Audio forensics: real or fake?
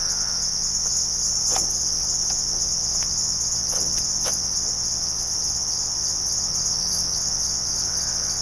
fake